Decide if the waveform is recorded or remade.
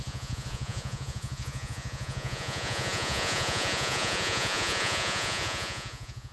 remade